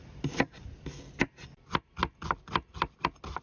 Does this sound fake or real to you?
real